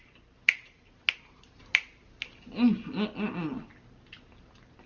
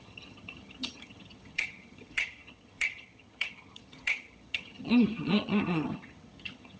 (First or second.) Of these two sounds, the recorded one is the first